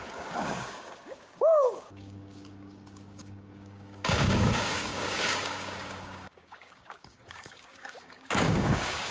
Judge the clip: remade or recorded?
remade